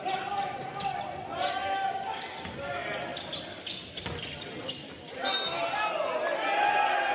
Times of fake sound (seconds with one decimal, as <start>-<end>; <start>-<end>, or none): none